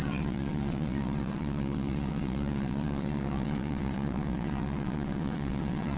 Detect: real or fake fake